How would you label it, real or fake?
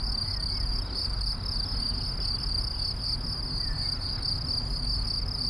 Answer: real